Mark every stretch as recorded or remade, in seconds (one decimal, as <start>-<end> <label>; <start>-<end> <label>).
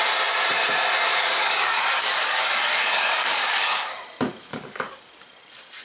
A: 0.0-1.1 recorded; 1.1-3.9 remade; 3.9-4.5 recorded; 4.5-5.1 remade; 5.1-5.8 recorded